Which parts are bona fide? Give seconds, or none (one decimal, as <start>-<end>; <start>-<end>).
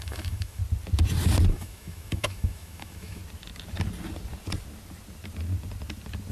0.6-1.5; 3.2-6.3